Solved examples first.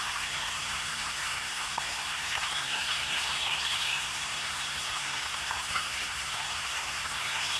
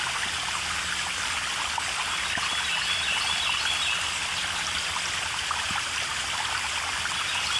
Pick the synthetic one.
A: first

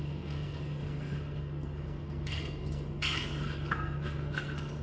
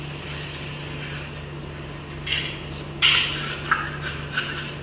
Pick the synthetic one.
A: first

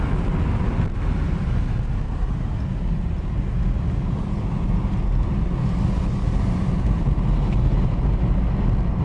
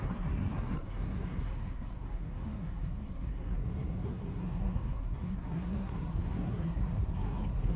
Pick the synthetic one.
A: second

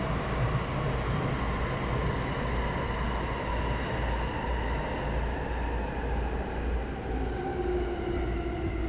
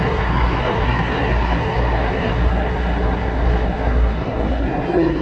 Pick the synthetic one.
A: second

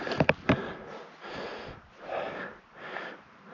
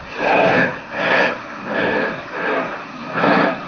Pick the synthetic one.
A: second